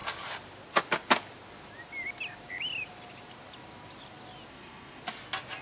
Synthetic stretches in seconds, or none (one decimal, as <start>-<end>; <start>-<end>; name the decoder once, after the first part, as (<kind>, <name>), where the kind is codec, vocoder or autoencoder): 4.5-5.0 (codec, SNAC)